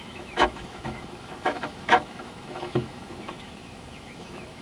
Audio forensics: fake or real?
fake